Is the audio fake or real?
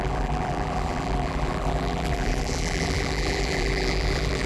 fake